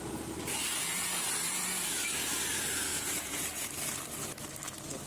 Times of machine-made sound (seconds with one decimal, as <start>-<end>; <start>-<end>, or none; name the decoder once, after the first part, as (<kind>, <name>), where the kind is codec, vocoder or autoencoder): 2.9-3.7 (vocoder, Vocos)